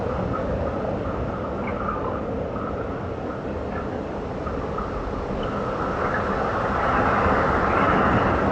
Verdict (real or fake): real